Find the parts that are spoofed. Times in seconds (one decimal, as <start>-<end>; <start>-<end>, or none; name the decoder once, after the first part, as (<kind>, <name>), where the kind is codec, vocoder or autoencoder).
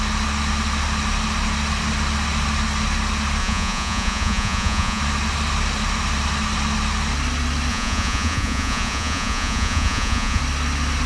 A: 3.4-5.0 (vocoder, Vocos); 7.7-10.4